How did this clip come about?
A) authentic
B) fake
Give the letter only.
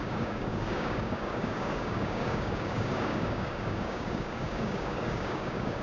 B